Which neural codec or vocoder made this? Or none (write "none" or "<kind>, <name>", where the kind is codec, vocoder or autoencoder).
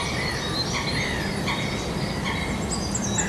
none